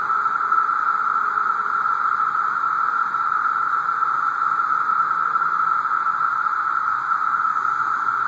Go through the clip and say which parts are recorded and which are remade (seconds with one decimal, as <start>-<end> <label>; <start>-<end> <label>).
0.0-6.3 recorded; 6.3-7.0 remade; 7.0-8.3 recorded